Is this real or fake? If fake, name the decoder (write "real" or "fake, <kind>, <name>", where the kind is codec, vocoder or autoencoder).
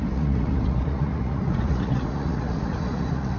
fake, vocoder, Vocos